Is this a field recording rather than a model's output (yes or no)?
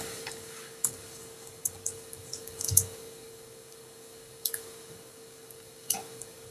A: no